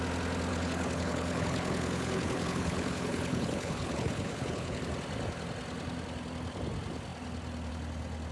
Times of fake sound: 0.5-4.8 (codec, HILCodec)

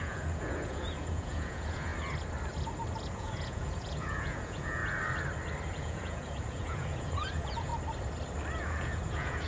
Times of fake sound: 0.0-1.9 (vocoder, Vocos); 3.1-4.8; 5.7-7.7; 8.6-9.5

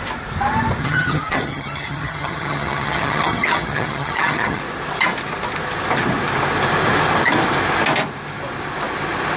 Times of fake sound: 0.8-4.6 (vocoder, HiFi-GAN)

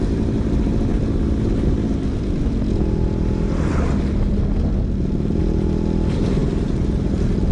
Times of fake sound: none

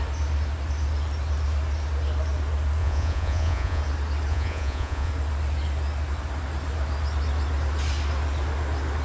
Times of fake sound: 2.8-3.8 (vocoder, Vocos); 4.3-5.1